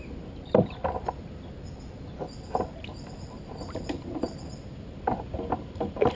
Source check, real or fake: real